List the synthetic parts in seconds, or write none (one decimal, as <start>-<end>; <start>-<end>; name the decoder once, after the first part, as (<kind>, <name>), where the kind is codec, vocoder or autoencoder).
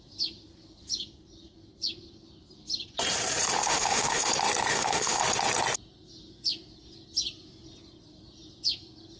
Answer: 3.6-4.3 (autoencoder, DAC-VAE); 4.7-5.2